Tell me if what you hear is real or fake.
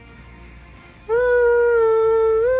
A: fake